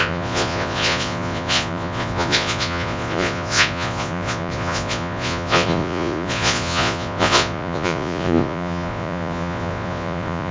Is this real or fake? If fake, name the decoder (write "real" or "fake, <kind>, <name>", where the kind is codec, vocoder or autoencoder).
fake, vocoder, Vocos